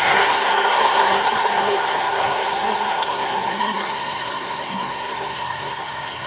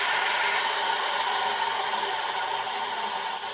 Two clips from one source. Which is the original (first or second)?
second